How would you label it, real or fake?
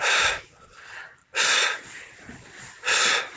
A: real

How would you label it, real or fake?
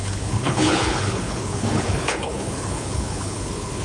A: fake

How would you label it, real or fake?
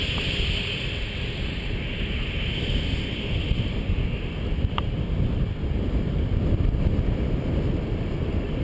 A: real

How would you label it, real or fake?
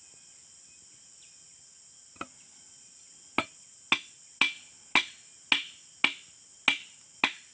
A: real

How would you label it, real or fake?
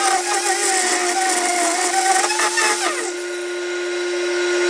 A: real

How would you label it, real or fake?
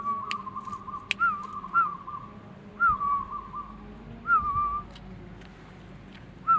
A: real